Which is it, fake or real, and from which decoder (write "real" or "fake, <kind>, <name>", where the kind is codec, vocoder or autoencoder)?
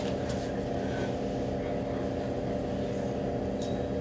real